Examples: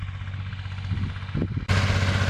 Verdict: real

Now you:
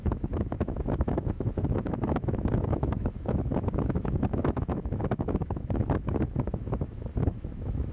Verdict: fake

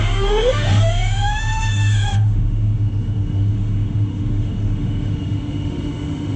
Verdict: fake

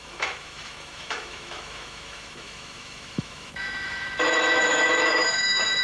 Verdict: fake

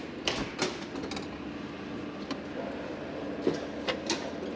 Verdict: real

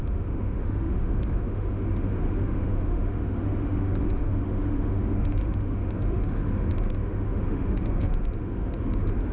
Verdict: fake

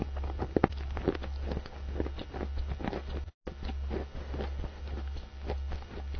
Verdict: real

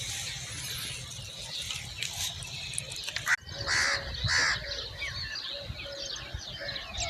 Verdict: real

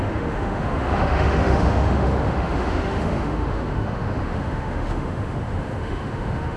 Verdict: fake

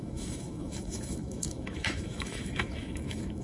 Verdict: fake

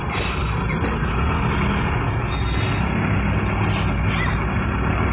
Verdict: real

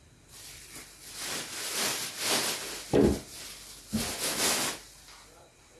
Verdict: real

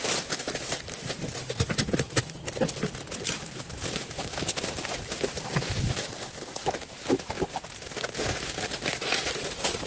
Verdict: real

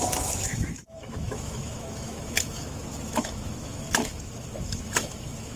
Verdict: fake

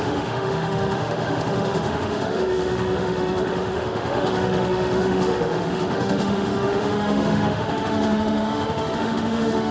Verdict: fake